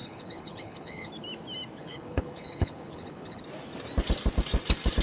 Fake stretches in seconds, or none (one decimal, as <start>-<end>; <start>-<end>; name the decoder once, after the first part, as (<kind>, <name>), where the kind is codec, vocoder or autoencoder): 0.0-1.1 (codec, HILCodec); 1.8-3.4